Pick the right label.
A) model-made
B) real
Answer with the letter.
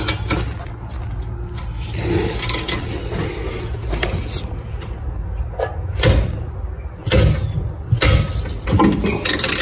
B